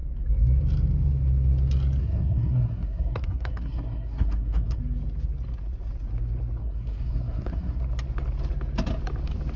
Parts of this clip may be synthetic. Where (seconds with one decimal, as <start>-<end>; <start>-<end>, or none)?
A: 2.0-4.8; 6.6-7.8